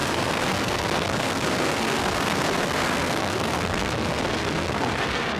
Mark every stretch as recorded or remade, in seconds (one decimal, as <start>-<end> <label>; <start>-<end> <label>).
0.0-5.4 remade